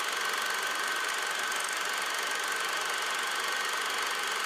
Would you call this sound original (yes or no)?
yes